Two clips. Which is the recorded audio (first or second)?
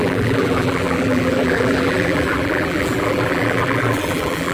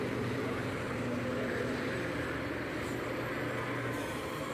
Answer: second